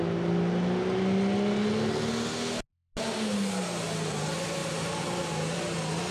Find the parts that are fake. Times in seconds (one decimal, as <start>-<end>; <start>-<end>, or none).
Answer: none